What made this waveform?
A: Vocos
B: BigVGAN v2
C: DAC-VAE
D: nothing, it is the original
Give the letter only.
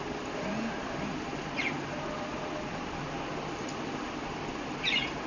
D